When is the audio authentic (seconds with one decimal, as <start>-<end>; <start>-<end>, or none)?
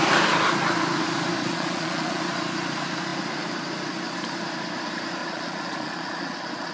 0.0-1.4; 2.2-5.2